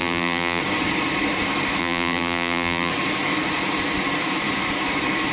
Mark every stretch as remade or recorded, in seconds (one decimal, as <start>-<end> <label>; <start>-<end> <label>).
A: 0.0-0.6 remade; 0.6-1.8 recorded; 1.8-2.9 remade; 2.9-5.3 recorded